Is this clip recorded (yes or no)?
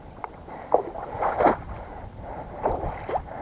no